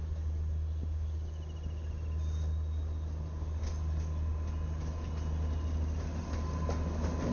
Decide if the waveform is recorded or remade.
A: recorded